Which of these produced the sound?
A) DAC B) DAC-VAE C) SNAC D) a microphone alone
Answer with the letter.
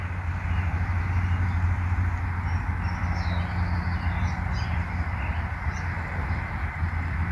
D